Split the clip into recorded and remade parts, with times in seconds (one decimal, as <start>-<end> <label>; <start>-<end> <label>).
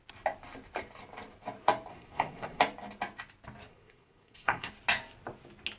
0.0-1.9 recorded; 1.9-2.6 remade; 2.6-3.7 recorded; 3.7-4.7 remade; 4.7-5.8 recorded